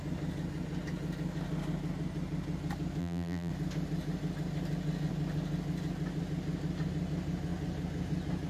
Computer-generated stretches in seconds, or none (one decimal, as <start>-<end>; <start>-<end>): 3.0-3.5